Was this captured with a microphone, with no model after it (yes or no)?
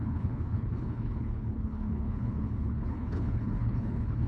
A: no